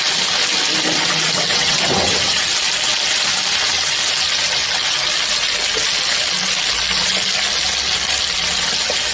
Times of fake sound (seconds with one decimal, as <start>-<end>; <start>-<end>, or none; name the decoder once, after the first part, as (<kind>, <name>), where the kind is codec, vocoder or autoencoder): 1.5-2.4 (vocoder, WaveNeXt)